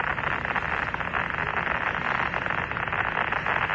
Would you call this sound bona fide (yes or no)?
yes